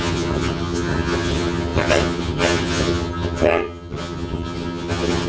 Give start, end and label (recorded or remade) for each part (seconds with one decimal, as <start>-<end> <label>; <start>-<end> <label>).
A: 0.0-5.3 remade